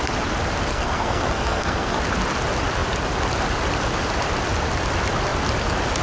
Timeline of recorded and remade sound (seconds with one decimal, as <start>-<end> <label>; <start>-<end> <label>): 0.0-0.7 recorded; 0.7-2.0 remade; 2.0-6.0 recorded

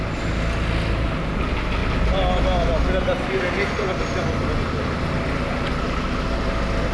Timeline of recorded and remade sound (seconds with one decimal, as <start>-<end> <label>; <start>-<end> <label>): 0.0-6.9 recorded

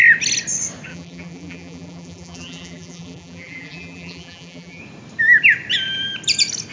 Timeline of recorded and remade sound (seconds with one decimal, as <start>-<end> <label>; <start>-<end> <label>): 0.0-0.9 recorded; 0.9-4.8 remade; 4.8-6.7 recorded

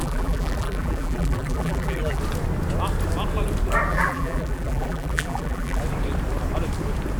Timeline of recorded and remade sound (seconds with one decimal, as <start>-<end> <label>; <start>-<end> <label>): 0.0-2.2 remade; 2.2-3.9 recorded; 3.9-5.8 remade; 5.8-7.2 recorded

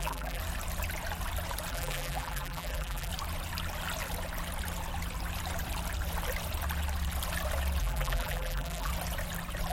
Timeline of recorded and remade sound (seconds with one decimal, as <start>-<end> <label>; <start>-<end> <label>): 0.0-0.4 remade; 0.4-1.7 recorded; 1.7-3.1 remade; 3.1-7.8 recorded; 7.8-8.9 remade; 8.9-9.7 recorded